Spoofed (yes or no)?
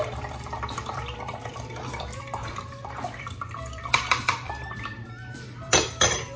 yes